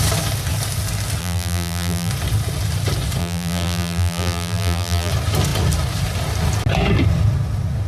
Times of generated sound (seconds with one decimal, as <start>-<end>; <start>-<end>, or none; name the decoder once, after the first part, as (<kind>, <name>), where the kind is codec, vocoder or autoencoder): 1.2-2.1 (vocoder, BigVGAN v2); 3.2-5.1